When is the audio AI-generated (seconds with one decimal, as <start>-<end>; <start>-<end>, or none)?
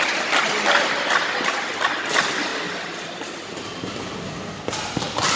none